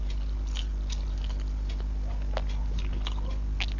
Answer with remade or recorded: recorded